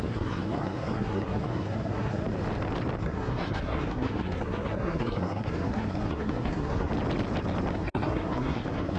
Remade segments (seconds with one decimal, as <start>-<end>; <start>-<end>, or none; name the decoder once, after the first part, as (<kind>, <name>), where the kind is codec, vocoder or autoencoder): 0.0-2.2 (codec, SNAC); 3.0-6.9; 7.7-9.0